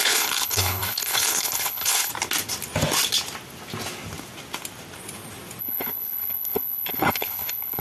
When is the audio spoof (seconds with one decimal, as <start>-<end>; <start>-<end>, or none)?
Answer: 0.0-2.1; 5.6-7.8